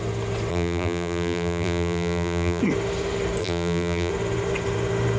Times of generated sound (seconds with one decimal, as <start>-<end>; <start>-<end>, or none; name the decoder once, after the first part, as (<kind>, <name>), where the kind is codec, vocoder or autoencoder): 0.5-2.6 (vocoder, BigVGAN v2); 3.4-4.1